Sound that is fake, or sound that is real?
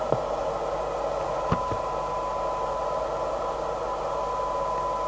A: real